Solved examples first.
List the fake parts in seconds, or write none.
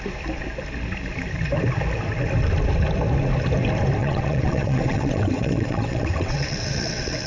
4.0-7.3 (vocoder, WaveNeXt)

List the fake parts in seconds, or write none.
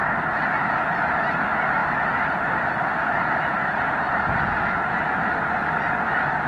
none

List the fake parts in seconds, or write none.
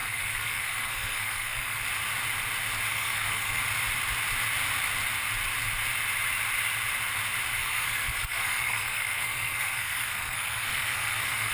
0.0-1.8 (codec, SNAC); 2.9-3.6; 7.6-11.5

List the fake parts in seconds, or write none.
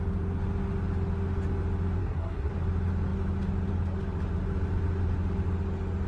2.0-2.5 (codec, SNAC)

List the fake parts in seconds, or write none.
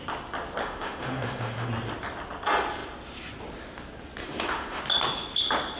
0.6-1.7 (autoencoder, DAC-VAE); 4.2-4.8